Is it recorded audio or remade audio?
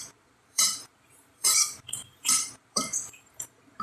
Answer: remade